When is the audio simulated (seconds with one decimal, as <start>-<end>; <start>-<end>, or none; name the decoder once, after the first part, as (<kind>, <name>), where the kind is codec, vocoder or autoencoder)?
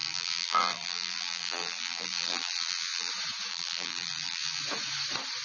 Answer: 0.0-3.1 (vocoder, BigVGAN v2); 3.5-4.6